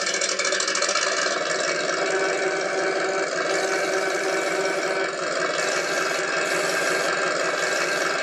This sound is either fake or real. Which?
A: real